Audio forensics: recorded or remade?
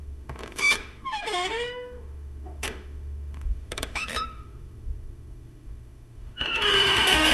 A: remade